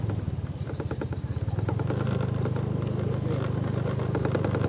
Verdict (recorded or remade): recorded